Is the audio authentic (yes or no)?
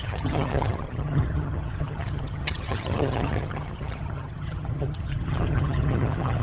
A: no